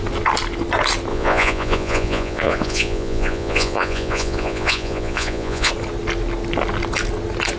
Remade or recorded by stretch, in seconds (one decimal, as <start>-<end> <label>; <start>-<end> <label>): 0.0-1.1 recorded; 1.1-5.7 remade; 5.7-7.6 recorded